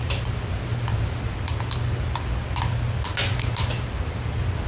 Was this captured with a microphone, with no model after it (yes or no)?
yes